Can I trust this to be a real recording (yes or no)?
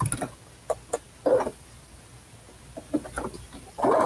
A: yes